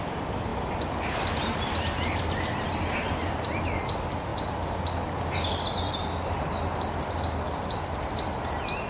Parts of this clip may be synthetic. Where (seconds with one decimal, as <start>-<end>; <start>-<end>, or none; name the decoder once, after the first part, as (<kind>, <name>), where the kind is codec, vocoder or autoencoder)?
none

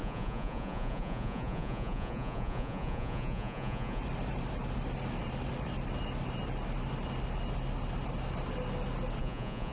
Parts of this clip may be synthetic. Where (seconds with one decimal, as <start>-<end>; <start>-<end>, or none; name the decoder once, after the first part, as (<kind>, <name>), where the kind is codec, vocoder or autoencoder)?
0.0-4.0 (vocoder, Vocos); 9.2-9.7

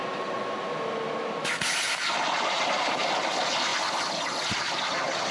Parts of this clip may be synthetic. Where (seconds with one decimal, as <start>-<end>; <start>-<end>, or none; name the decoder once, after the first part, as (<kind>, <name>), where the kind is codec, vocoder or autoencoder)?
none

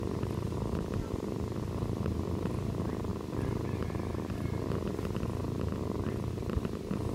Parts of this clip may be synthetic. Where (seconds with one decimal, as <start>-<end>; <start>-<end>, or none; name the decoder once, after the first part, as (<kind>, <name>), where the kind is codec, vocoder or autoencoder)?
0.0-3.1 (vocoder, BigVGAN v2); 6.3-7.1